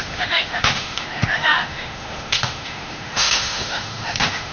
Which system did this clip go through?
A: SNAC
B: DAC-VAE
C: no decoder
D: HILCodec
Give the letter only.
B